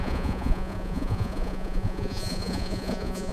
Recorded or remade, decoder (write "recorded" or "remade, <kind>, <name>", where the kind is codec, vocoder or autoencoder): remade, vocoder, Vocos